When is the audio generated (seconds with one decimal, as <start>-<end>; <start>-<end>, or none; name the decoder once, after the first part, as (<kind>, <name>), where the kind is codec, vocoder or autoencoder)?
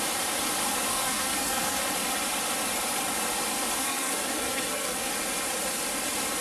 0.9-1.8 (codec, SNAC); 3.8-5.1